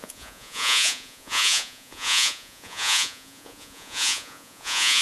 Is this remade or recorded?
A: remade